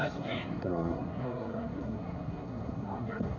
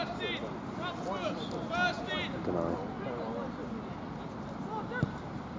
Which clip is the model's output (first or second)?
first